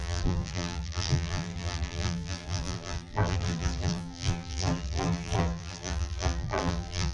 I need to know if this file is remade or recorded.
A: remade